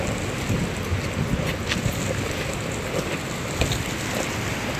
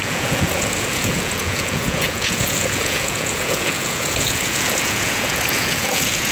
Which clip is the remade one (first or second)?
second